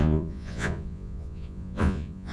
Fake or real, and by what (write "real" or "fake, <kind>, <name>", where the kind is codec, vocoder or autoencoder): fake, vocoder, Vocos